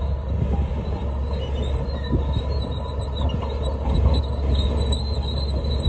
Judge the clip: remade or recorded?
recorded